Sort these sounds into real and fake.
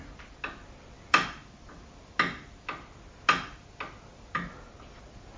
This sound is real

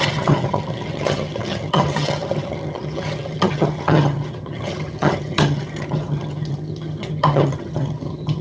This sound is fake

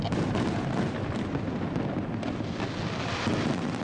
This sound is real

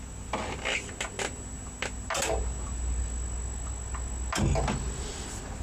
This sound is real